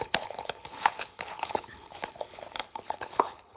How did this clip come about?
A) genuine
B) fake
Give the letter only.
B